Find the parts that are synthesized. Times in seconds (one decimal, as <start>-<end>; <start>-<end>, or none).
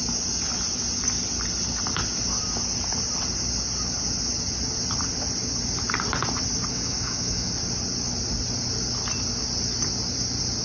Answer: 6.7-7.5